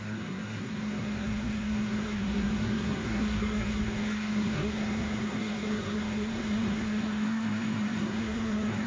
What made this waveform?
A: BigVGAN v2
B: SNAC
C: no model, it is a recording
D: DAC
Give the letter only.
B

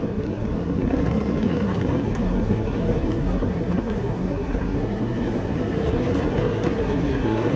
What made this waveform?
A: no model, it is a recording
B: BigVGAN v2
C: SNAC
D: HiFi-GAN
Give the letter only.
C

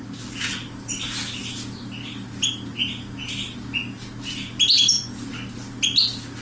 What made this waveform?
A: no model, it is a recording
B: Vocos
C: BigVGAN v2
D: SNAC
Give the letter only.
A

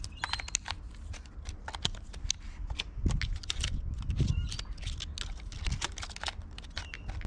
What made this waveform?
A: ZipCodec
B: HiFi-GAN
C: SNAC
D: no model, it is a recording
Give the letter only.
D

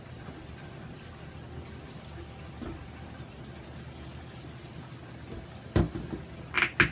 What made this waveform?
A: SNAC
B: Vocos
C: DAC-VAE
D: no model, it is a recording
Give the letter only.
D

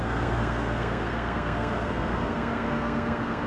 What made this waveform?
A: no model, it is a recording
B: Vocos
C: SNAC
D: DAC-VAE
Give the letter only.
C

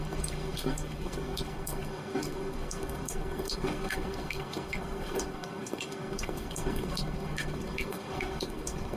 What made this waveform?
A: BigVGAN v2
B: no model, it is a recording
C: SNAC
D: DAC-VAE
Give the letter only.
C